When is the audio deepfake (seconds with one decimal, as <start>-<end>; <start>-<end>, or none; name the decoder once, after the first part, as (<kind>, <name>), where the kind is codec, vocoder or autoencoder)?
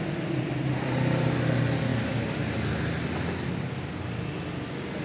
none